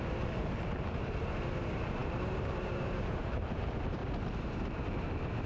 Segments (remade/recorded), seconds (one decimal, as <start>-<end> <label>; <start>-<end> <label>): 0.0-4.0 remade; 4.0-4.9 recorded; 4.9-5.5 remade